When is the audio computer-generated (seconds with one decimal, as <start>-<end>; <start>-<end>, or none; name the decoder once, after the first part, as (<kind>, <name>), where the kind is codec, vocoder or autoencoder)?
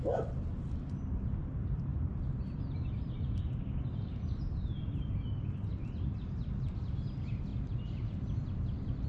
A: 7.5-9.1 (vocoder, BigVGAN v2)